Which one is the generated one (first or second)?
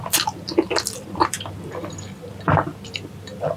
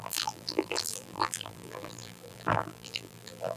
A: second